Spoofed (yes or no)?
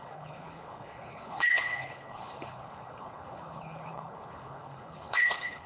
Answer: yes